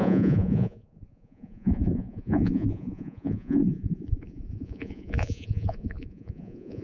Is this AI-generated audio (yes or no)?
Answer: yes